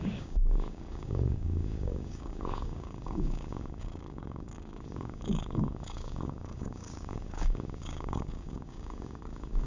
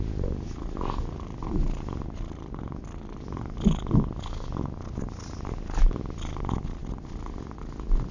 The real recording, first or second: second